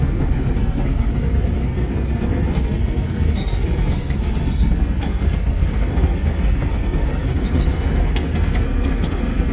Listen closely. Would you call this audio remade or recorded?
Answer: remade